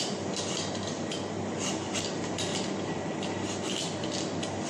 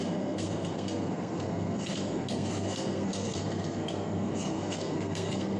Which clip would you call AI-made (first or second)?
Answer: second